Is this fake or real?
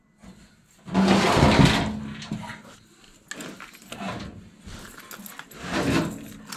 real